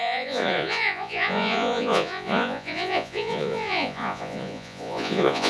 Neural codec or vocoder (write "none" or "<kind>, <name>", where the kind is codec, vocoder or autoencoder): vocoder, Vocos